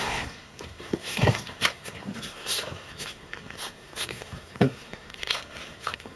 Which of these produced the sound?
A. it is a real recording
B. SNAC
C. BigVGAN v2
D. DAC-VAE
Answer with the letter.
B